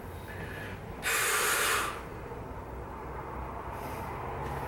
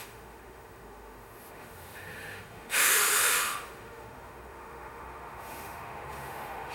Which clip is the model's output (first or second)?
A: second